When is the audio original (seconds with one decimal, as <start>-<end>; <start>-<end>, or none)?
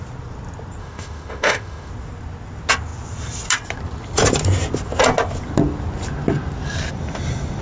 0.0-0.8; 1.9-7.6